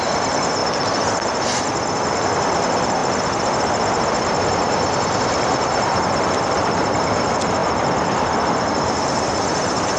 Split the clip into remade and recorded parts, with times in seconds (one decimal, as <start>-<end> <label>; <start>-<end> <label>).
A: 0.0-0.6 remade; 0.6-2.2 recorded; 2.2-3.0 remade; 3.0-4.5 recorded; 4.5-7.6 remade; 7.6-9.3 recorded; 9.3-10.0 remade

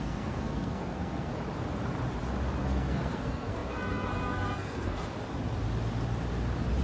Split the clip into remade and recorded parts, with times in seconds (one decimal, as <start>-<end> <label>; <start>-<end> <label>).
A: 0.0-1.3 remade; 1.3-2.6 recorded; 2.6-5.0 remade; 5.0-6.8 recorded

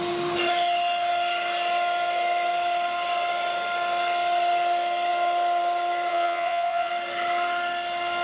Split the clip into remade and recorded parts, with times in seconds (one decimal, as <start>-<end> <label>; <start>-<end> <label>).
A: 0.0-6.1 recorded; 6.1-6.9 remade; 6.9-8.2 recorded

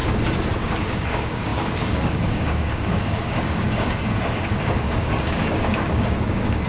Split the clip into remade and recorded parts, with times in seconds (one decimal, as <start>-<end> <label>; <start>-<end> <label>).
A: 0.0-0.8 recorded; 0.8-6.7 remade

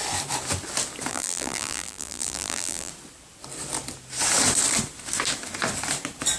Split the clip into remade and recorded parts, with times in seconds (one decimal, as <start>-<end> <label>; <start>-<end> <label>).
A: 0.0-1.1 recorded; 1.1-2.9 remade; 2.9-6.4 recorded

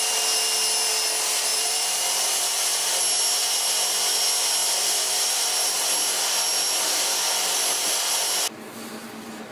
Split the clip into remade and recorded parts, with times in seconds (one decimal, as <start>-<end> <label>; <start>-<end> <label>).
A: 0.0-1.5 recorded; 1.5-3.0 remade; 3.0-9.5 recorded

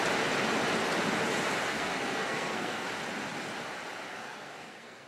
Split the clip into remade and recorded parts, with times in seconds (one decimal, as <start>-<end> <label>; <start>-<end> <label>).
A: 0.0-1.7 recorded; 1.7-2.9 remade; 2.9-4.1 recorded; 4.1-5.1 remade

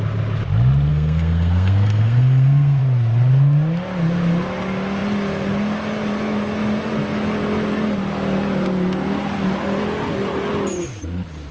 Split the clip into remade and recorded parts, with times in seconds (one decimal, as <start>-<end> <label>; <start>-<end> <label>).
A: 0.0-0.9 recorded; 0.9-2.8 remade; 2.8-11.5 recorded